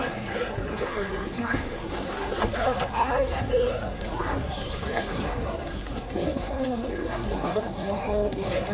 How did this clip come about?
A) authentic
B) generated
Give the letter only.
B